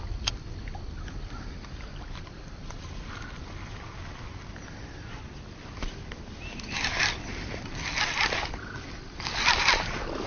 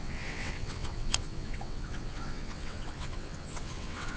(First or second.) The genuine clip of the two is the first